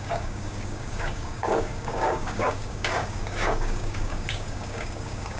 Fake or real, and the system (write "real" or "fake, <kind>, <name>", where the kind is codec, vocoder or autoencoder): fake, codec, DAC